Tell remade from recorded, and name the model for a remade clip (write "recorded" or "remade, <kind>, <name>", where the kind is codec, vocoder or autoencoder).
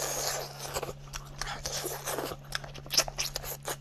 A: recorded